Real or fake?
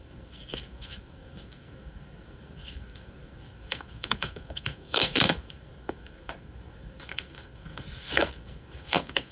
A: fake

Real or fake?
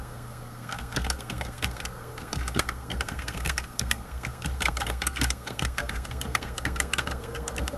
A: fake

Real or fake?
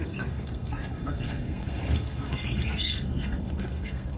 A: fake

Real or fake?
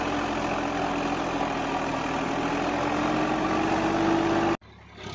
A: real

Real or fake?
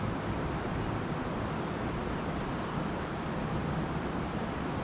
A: real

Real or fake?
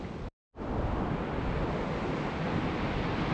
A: real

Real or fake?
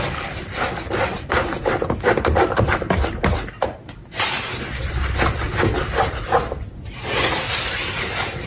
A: real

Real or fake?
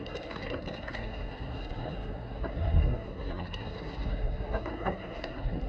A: fake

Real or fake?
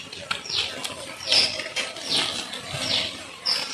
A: real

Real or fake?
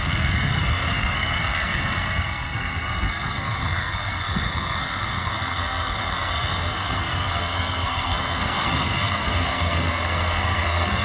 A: fake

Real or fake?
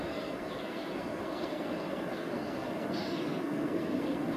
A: fake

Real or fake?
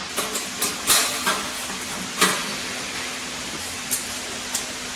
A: real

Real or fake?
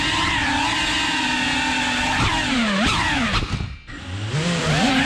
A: real